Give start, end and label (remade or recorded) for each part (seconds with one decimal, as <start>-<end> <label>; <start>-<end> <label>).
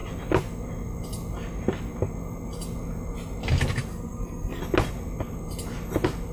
0.0-3.9 recorded; 3.9-4.6 remade; 4.6-6.3 recorded